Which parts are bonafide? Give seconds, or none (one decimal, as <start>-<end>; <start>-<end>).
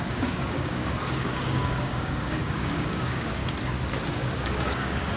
3.4-4.1